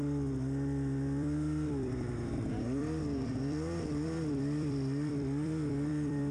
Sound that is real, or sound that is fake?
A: fake